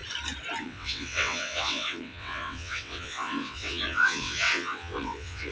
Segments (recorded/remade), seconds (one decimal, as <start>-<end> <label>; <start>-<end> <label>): 0.0-0.6 recorded; 0.6-5.5 remade